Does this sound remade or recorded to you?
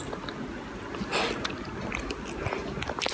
recorded